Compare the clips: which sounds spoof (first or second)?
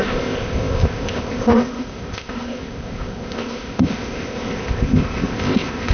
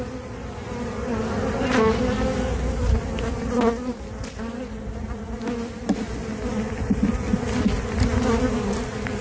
first